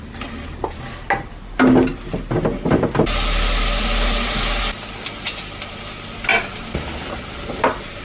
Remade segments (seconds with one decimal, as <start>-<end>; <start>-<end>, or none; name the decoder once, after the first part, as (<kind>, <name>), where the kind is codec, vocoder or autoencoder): none